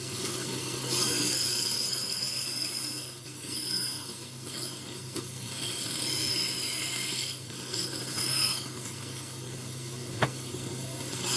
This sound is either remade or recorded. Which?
remade